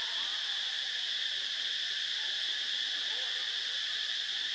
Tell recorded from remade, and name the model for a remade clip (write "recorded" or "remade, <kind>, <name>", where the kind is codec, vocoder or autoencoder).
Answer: recorded